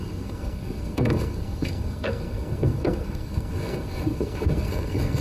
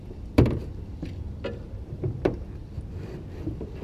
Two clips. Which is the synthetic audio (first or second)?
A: first